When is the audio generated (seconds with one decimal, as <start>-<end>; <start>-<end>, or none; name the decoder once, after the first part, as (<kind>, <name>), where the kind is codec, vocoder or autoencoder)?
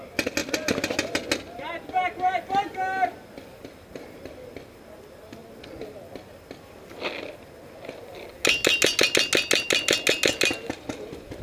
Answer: none